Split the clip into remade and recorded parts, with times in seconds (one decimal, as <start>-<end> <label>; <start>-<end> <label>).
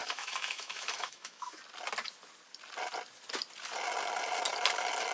0.0-1.6 remade; 1.6-5.1 recorded